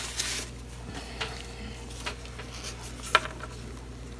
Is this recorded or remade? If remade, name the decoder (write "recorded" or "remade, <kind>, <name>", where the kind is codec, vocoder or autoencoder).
recorded